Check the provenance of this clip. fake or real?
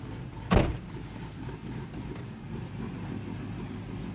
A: real